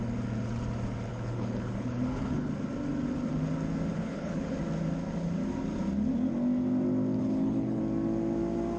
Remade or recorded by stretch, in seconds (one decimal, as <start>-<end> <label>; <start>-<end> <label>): 0.0-1.1 recorded; 1.1-2.5 remade; 2.5-3.9 recorded; 3.9-4.5 remade; 4.5-7.2 recorded; 7.2-7.8 remade; 7.8-8.8 recorded